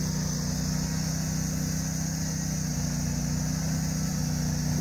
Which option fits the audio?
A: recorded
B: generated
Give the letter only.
A